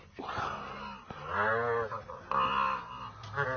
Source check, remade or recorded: recorded